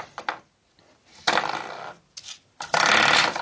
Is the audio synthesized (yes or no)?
no